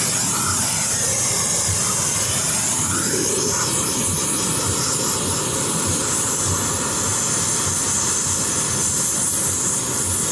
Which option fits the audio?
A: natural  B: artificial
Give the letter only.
A